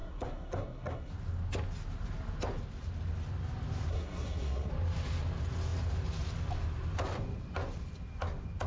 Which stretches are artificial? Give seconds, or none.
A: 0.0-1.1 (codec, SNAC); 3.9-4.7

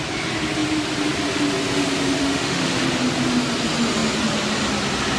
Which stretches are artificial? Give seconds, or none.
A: 2.2-2.7 (autoencoder, DAC-VAE)

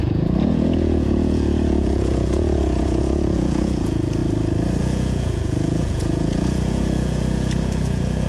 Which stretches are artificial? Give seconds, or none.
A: 0.0-4.2 (vocoder, Vocos); 4.8-8.3

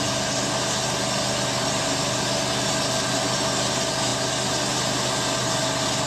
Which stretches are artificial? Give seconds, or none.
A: none

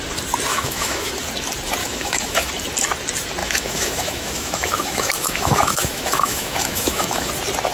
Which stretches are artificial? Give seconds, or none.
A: 0.5-1.1 (autoencoder, DAC-VAE); 1.8-2.5; 3.4-7.3

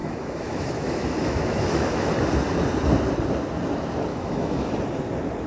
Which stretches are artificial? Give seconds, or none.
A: 0.0-2.1 (autoencoder, DAC-VAE); 4.1-4.7

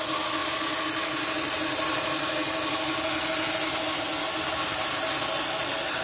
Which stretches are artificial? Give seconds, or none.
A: none

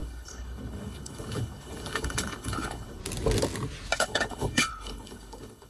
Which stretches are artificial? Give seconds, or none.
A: 0.0-3.0 (codec, HILCodec); 4.0-5.7